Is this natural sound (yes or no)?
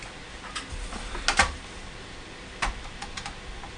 yes